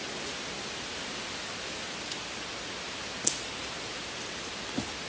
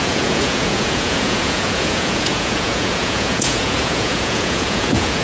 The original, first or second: first